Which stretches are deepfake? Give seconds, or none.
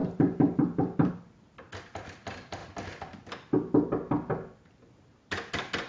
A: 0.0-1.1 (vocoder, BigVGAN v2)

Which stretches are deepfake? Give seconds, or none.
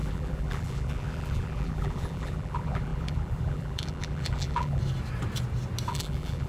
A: 0.0-4.8 (vocoder, BigVGAN v2); 5.9-6.5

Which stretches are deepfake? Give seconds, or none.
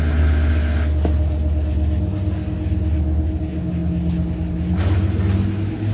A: none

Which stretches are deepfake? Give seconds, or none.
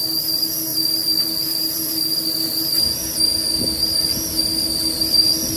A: 0.7-2.0 (vocoder, BigVGAN v2)